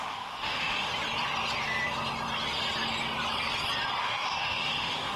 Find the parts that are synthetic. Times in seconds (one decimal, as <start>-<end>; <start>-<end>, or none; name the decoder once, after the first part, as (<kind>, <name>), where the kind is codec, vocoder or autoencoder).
0.0-0.9 (autoencoder, DAC-VAE); 4.0-5.2